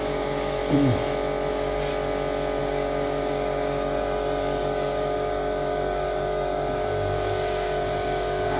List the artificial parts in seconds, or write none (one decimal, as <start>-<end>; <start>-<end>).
0.0-0.6; 1.5-1.9; 2.6-8.6